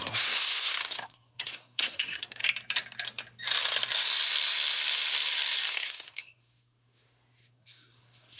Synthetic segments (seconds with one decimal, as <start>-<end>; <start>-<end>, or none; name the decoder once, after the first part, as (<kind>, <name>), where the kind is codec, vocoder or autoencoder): 0.0-2.4 (codec, SNAC); 5.7-8.4